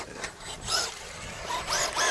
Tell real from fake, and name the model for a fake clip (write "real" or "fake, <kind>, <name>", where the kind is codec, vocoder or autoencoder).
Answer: real